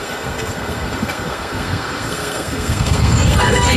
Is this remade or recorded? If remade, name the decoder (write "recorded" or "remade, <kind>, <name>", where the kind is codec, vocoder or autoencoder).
remade, codec, SNAC